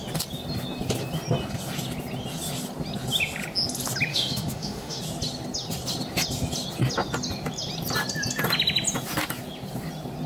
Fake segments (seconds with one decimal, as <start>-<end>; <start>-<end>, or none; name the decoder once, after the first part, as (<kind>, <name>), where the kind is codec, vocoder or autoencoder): 4.1-5.0 (autoencoder, DAC-VAE)